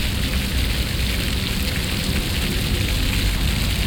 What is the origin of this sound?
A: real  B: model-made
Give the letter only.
A